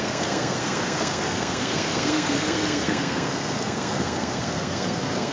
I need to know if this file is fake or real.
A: fake